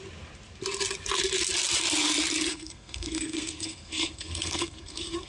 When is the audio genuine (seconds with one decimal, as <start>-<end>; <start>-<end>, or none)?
0.0-2.5